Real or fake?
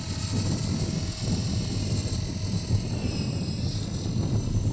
real